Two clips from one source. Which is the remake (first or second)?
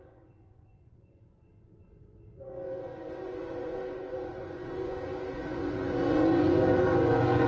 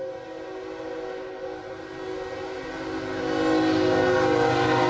first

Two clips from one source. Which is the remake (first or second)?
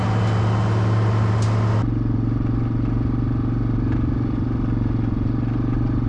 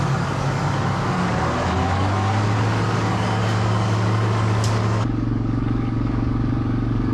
second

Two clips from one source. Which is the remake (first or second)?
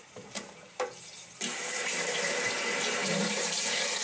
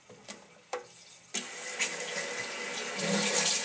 first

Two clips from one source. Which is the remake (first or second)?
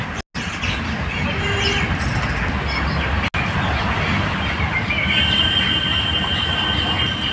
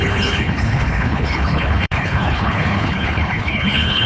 second